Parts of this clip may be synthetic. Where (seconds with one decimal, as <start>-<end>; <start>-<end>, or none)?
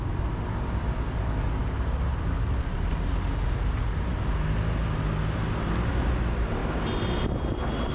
none